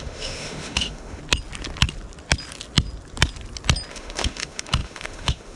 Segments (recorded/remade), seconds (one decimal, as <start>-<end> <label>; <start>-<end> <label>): 0.0-1.2 remade; 1.2-3.9 recorded; 3.9-5.6 remade